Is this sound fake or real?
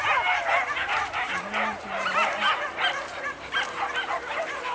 real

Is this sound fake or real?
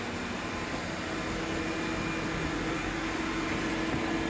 real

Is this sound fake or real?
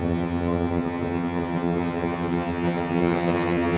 fake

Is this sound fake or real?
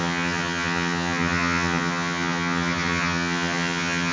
fake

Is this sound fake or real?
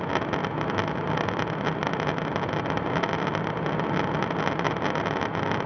real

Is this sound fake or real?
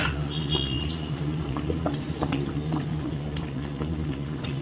fake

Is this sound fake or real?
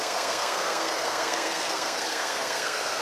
fake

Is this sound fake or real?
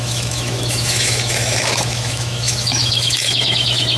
fake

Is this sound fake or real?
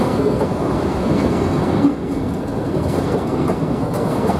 fake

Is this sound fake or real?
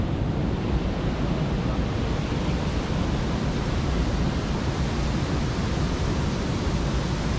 real